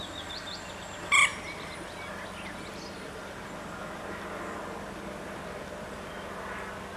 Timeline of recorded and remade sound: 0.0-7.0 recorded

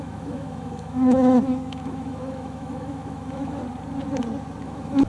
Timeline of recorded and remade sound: 0.0-3.6 remade; 3.6-4.6 recorded; 4.6-5.1 remade

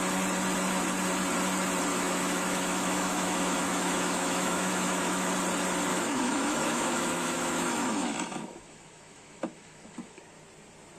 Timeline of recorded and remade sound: 0.0-1.9 recorded; 1.9-5.3 remade; 5.3-5.9 recorded; 5.9-10.2 remade; 10.2-11.0 recorded

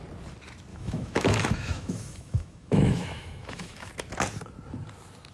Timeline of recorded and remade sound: 0.0-0.7 recorded; 0.7-3.9 remade; 3.9-5.3 recorded

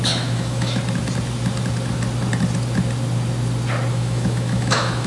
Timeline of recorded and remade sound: 0.0-0.8 remade; 0.8-3.9 recorded; 3.9-5.1 remade